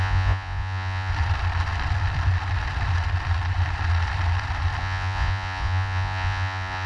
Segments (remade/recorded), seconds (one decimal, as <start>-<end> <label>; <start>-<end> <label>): 0.0-1.1 remade; 1.1-4.8 recorded; 4.8-6.9 remade